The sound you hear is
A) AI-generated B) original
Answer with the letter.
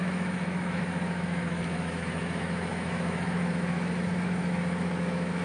A